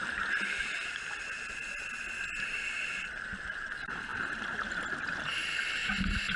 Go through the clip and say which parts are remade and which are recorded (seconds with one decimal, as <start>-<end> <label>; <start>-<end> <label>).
0.0-6.4 recorded